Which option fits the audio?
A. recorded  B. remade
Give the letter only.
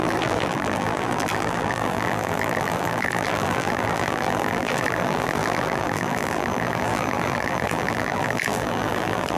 B